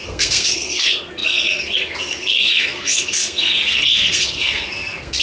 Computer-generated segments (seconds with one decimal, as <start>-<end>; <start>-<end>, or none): 0.0-5.2